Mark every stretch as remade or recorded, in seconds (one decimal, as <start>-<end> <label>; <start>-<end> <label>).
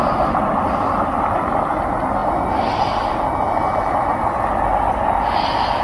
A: 0.0-5.8 recorded